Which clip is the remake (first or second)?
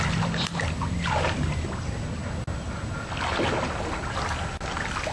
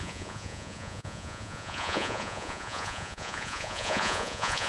second